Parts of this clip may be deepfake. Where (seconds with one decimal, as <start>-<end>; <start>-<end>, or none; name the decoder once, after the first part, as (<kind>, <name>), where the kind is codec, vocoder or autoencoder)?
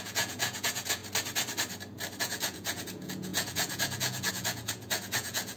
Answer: 0.0-1.0 (vocoder, Vocos); 2.2-5.6